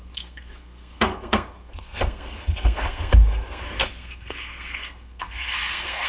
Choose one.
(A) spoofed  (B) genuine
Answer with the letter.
A